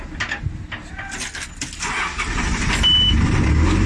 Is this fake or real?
real